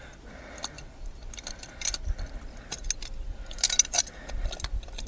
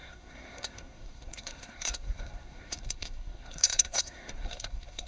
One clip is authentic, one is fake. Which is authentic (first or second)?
first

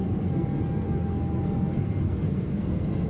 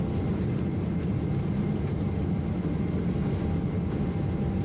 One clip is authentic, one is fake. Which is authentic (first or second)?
second